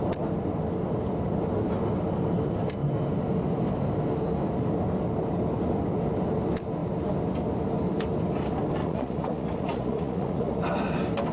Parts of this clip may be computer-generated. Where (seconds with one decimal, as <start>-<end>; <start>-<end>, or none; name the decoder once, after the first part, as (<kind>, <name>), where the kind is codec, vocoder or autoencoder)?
8.8-10.6 (vocoder, Vocos)